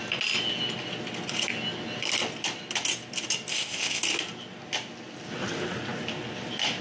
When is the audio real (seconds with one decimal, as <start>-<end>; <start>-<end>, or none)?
0.0-3.5; 4.0-6.8